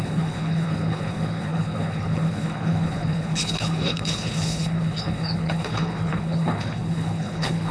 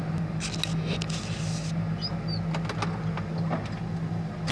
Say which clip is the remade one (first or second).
first